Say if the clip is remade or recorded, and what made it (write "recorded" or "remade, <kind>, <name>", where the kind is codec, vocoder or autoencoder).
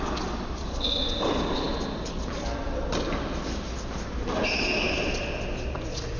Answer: recorded